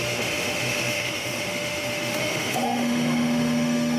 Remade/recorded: remade